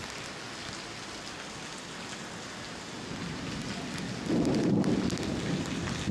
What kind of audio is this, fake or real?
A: real